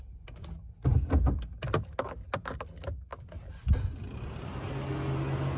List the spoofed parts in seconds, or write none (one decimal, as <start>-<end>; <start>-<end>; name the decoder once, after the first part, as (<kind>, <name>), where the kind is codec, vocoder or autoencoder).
none